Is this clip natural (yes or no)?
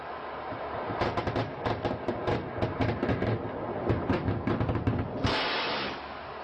yes